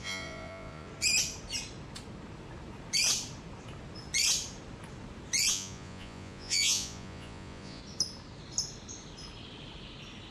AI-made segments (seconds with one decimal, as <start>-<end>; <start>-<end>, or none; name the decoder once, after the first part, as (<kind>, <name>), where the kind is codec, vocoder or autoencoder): 0.0-0.9 (vocoder, Vocos); 5.5-7.8

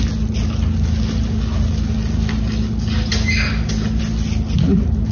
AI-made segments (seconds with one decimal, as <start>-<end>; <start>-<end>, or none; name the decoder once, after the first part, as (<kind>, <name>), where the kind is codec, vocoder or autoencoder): none

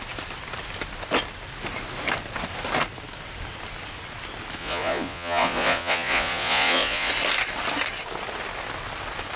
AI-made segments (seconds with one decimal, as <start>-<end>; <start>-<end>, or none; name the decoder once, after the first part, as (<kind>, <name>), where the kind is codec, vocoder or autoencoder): 4.6-7.1 (vocoder, Vocos)

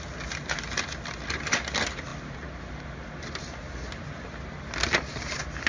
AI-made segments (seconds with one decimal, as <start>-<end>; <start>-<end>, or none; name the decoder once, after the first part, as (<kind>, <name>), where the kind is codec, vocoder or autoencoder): none